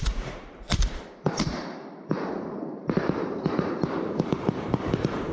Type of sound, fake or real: fake